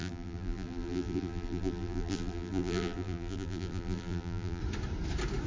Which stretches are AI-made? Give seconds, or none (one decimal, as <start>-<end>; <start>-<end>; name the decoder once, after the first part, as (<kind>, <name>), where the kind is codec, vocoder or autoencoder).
0.0-4.6 (vocoder, BigVGAN v2)